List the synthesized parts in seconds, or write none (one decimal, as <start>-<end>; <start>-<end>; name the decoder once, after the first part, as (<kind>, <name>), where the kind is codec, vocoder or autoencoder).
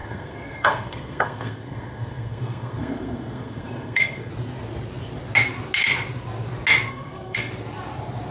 0.0-4.3 (codec, SNAC); 6.9-7.5